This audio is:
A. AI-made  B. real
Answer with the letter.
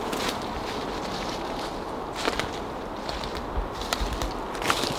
B